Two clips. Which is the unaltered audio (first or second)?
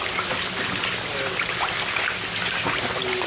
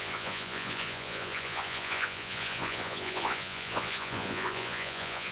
first